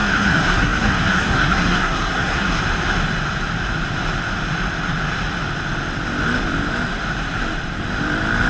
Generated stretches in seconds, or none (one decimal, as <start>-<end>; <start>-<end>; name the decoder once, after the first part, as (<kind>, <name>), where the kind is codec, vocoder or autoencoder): 0.0-2.6 (codec, SNAC)